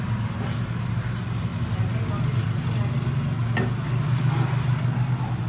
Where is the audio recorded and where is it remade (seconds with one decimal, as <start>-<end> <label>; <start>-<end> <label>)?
0.0-5.5 recorded